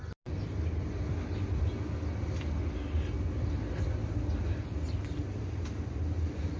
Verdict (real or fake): real